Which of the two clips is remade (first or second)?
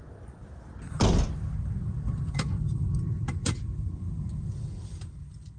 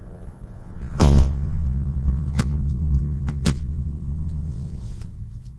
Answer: second